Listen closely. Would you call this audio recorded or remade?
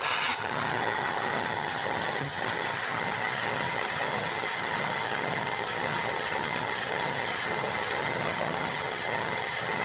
remade